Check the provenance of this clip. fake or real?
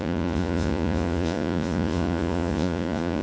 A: fake